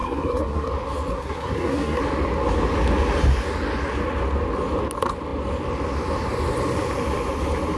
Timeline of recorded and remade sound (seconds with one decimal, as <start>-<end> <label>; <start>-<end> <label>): 0.0-0.7 remade; 0.7-1.1 recorded; 1.1-2.0 remade; 2.0-7.8 recorded